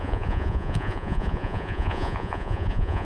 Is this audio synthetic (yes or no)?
yes